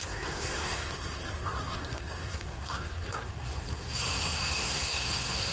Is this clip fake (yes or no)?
yes